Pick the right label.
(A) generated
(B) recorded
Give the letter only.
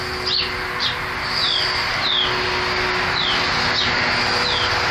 B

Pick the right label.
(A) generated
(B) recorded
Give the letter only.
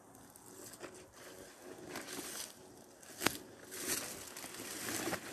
B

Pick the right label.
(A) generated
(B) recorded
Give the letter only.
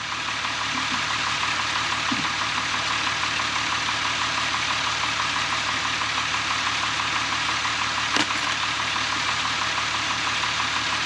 B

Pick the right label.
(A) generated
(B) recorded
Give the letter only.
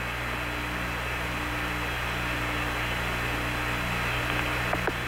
B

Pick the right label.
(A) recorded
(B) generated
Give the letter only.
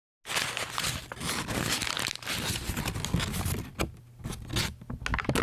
A